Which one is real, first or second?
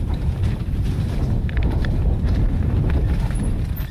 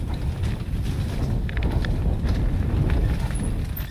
second